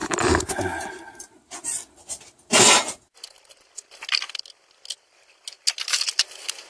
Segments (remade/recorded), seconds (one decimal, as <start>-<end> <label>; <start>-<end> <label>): 0.0-6.7 recorded

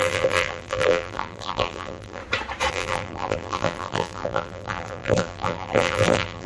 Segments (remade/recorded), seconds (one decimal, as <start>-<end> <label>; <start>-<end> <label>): 0.0-2.2 remade; 2.2-2.7 recorded; 2.7-6.5 remade